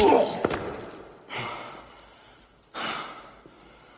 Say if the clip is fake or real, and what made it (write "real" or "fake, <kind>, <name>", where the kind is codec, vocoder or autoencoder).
real